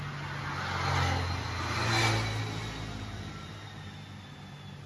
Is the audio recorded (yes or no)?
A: yes